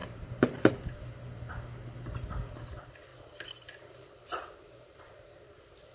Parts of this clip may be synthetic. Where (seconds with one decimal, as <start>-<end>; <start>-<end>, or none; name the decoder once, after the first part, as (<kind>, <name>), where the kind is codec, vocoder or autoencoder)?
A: 0.0-0.7 (vocoder, BigVGAN v2); 4.3-5.9